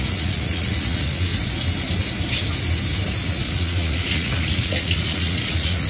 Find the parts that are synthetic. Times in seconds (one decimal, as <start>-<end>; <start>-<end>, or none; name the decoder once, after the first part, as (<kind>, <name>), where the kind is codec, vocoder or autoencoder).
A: 0.0-1.3 (vocoder, Vocos); 3.1-5.9